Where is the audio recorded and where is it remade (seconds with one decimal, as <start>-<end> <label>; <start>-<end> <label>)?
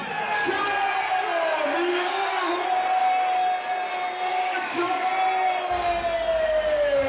0.0-1.9 recorded; 1.9-2.5 remade; 2.5-4.3 recorded; 4.3-5.1 remade; 5.1-7.1 recorded